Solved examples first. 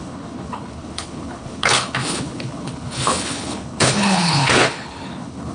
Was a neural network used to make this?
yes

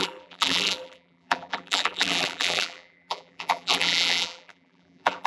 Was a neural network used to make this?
yes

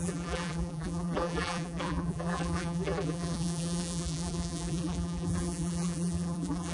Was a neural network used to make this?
yes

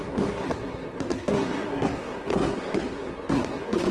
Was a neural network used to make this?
yes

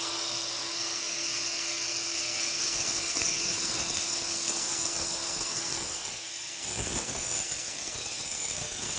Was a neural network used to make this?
yes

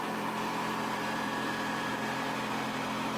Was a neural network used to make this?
yes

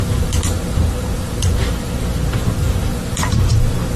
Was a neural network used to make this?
yes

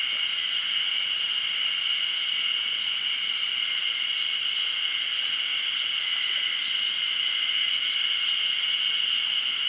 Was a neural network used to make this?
no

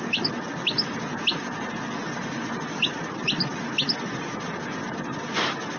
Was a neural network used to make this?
no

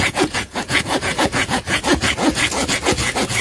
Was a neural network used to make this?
yes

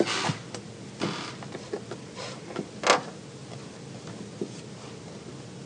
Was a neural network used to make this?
no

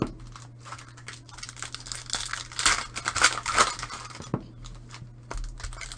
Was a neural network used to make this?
no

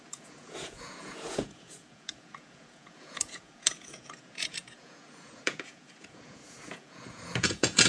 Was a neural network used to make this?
yes